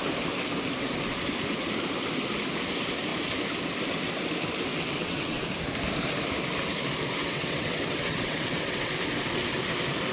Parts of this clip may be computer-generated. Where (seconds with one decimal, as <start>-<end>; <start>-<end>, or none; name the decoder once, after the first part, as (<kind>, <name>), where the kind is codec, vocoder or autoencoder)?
4.7-5.4 (vocoder, WaveNeXt); 7.2-8.9